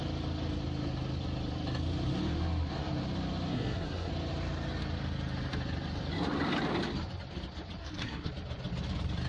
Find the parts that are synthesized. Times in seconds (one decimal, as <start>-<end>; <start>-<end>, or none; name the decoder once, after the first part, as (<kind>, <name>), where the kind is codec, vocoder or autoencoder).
3.5-4.1 (codec, SNAC); 7.8-8.3